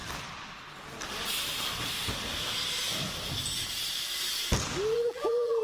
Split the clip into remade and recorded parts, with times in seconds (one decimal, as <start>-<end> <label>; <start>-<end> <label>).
0.0-4.9 recorded; 4.9-5.6 remade

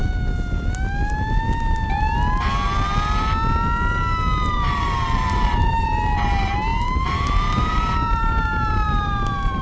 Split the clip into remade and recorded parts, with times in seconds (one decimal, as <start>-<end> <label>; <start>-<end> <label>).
0.0-4.5 recorded; 4.5-9.6 remade

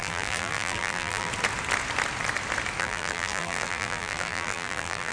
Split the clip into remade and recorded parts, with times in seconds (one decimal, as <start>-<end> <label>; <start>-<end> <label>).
0.0-1.3 remade; 1.3-2.8 recorded; 2.8-5.1 remade

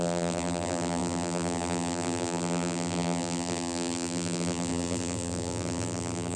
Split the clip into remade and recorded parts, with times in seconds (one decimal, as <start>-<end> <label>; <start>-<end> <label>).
0.0-6.4 remade

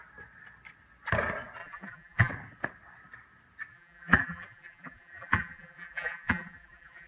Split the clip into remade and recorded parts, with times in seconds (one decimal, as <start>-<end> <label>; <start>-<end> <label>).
0.0-1.6 recorded; 1.6-2.3 remade; 2.3-3.7 recorded; 3.7-7.1 remade

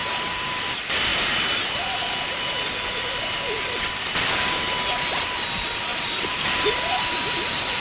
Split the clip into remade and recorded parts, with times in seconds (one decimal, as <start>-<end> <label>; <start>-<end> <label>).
0.0-0.6 remade; 0.6-5.9 recorded; 5.9-7.8 remade

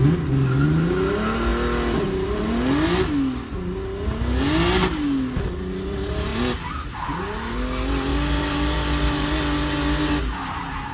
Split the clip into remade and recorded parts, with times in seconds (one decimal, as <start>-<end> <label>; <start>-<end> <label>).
0.0-8.1 recorded; 8.1-9.4 remade; 9.4-10.9 recorded

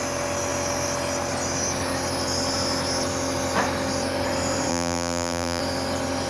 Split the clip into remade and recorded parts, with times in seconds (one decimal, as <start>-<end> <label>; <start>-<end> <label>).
0.0-4.7 recorded; 4.7-5.6 remade; 5.6-6.3 recorded